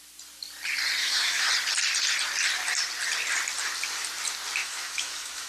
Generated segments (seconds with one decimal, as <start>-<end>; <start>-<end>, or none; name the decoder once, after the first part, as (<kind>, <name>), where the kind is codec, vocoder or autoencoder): 1.0-1.5 (autoencoder, DAC-VAE); 4.6-5.5